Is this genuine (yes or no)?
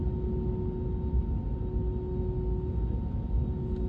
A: yes